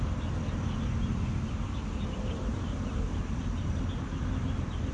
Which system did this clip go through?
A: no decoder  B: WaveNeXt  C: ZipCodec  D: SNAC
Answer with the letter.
A